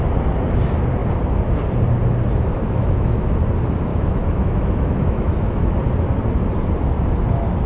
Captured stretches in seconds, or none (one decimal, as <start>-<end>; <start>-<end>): 0.0-2.5; 3.4-3.9; 5.7-7.7